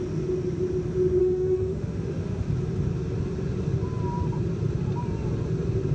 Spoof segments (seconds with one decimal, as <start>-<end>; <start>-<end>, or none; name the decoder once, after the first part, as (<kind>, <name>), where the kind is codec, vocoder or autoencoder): 1.2-2.5 (autoencoder, DAC-VAE)